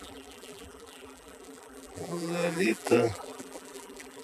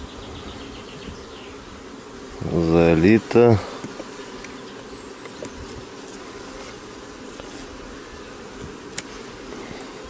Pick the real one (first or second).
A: second